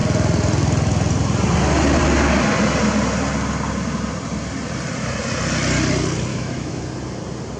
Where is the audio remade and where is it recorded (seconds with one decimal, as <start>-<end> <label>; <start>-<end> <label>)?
0.0-6.3 recorded; 6.3-6.8 remade; 6.8-7.6 recorded